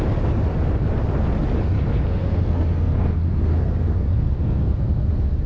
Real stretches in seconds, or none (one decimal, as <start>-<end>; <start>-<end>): 0.0-2.1; 5.1-5.5

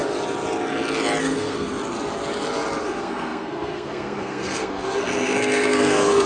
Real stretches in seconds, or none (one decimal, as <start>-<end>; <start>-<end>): 0.0-1.2; 1.7-2.8

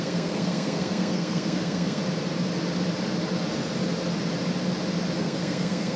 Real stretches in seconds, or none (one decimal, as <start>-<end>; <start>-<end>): 2.0-5.2